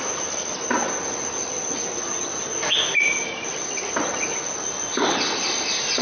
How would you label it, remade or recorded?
recorded